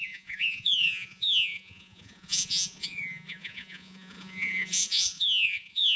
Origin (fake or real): fake